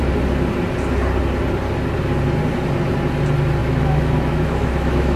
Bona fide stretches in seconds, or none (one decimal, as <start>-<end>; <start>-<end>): 0.0-3.6